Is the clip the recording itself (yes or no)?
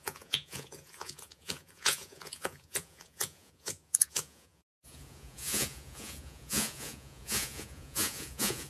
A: no